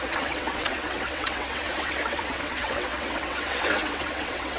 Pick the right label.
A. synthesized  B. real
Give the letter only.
A